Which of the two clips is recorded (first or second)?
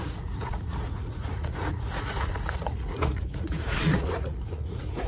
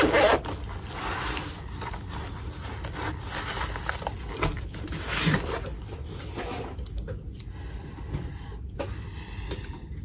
second